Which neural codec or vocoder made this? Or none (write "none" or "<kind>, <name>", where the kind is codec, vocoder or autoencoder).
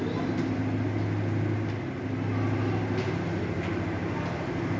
none